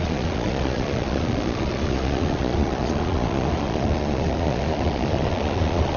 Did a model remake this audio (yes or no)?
yes